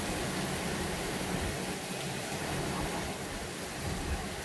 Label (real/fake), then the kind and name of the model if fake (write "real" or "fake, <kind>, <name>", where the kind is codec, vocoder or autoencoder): real